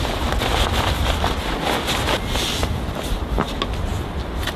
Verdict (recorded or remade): recorded